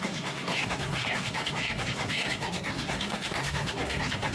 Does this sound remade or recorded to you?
remade